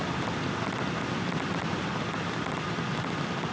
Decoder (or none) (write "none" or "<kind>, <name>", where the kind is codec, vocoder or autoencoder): none